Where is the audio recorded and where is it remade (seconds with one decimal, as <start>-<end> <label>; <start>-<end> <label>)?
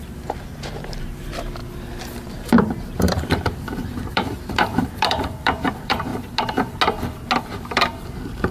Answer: 0.0-1.6 remade; 1.6-2.3 recorded; 2.3-6.1 remade; 6.1-7.4 recorded; 7.4-8.5 remade